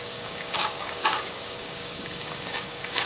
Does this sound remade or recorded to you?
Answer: remade